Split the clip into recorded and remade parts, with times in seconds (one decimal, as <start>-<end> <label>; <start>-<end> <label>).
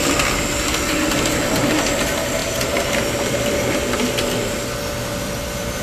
0.0-2.4 recorded; 2.4-5.8 remade